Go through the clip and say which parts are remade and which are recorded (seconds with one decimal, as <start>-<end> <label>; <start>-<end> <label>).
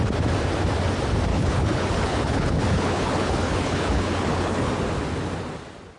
0.0-1.3 recorded; 1.3-4.7 remade; 4.7-6.0 recorded